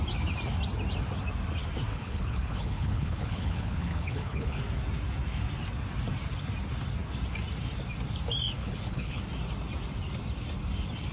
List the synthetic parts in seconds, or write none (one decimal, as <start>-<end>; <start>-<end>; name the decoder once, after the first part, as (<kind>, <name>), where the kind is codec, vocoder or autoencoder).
1.9-4.6 (codec, HILCodec); 8.6-9.2